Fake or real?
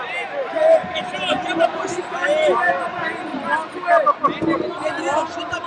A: real